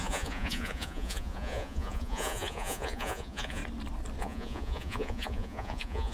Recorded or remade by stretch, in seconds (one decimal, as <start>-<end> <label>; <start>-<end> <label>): 0.0-3.6 remade; 3.6-4.2 recorded; 4.2-6.1 remade